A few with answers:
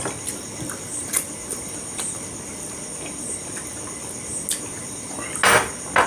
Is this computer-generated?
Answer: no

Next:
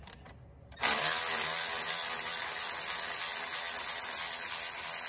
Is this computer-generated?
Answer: no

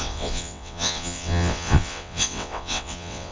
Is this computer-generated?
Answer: yes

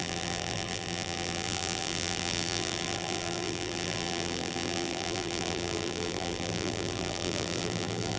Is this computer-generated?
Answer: yes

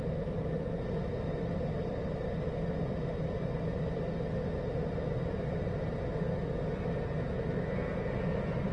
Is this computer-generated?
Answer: no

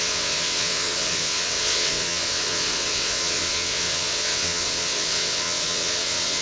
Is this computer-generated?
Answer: yes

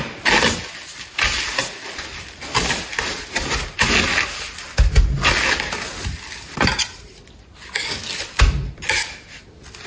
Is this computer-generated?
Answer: no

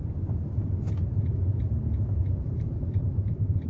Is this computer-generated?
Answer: yes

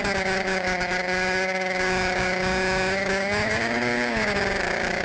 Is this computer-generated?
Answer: yes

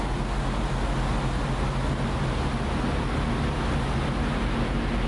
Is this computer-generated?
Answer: no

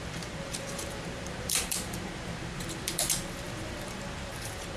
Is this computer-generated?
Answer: yes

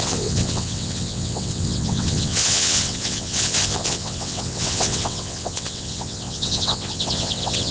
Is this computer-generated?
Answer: yes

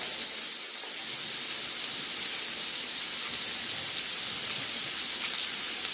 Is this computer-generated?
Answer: no